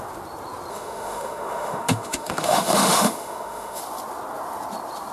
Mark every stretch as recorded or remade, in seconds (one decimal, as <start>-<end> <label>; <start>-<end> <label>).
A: 0.0-0.7 recorded; 0.7-3.8 remade; 3.8-5.1 recorded